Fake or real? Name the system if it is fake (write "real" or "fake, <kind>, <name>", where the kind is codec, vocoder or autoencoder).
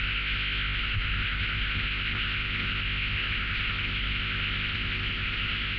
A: fake, codec, ZipCodec